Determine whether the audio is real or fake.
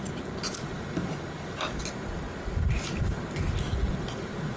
real